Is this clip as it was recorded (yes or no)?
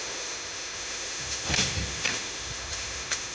no